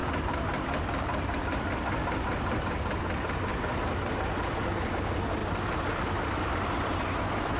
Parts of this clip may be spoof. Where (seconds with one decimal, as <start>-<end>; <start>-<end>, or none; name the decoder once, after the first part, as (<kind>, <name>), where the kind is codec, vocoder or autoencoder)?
3.5-4.9 (vocoder, BigVGAN v2)